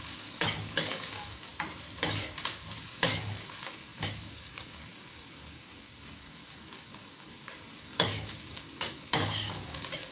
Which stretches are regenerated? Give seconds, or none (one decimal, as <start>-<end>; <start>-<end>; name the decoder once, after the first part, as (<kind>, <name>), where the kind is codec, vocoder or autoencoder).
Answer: 0.0-1.5 (codec, DAC); 2.8-10.1